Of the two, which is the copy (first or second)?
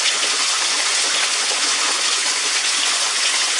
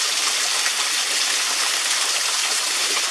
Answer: first